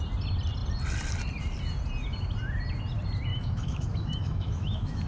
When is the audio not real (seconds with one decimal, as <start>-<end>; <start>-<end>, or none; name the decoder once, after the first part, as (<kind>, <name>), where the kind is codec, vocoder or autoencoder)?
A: 3.3-5.1 (autoencoder, DAC-VAE)